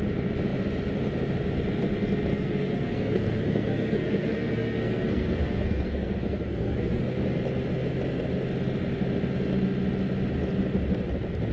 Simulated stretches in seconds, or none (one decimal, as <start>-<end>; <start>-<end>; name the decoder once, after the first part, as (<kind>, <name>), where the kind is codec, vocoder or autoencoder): 2.3-7.0 (codec, SNAC)